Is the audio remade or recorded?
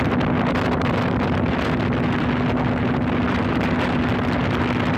recorded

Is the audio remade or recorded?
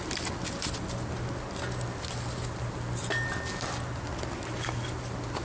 recorded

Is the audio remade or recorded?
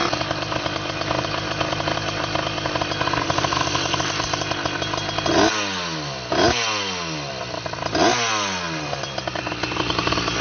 recorded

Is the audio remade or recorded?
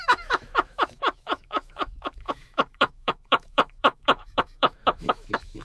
remade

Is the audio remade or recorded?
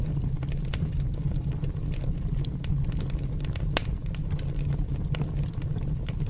recorded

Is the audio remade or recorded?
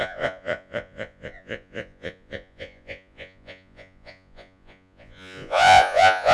remade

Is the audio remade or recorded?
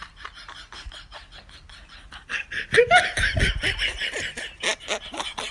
recorded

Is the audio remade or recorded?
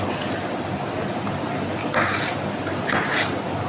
recorded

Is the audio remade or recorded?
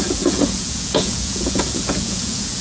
remade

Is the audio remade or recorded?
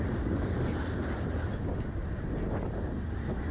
recorded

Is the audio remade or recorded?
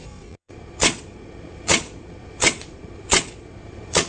remade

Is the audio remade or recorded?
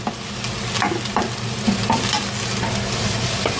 recorded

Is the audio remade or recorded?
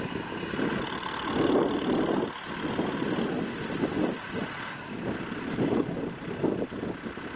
recorded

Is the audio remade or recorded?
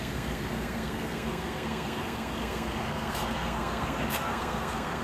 remade